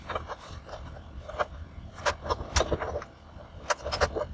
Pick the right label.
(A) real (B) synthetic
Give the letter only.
A